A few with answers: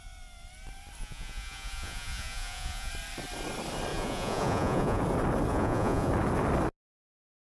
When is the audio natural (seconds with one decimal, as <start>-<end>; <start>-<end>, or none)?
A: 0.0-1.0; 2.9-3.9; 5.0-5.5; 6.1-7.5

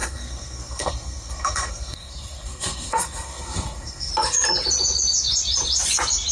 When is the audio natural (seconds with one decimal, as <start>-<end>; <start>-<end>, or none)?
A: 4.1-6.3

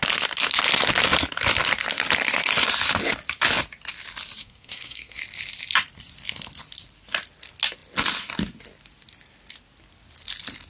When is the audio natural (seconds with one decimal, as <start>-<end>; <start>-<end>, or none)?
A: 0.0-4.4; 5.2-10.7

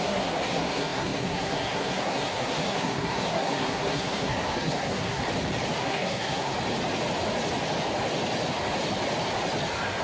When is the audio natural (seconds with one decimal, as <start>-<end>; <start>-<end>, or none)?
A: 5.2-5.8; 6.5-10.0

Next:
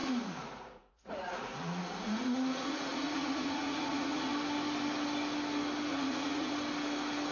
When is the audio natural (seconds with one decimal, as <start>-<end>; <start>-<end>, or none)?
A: 4.3-5.9; 6.5-7.3